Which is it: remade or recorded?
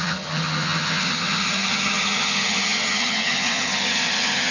remade